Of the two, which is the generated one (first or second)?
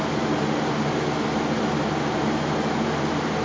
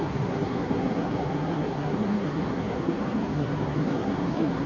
second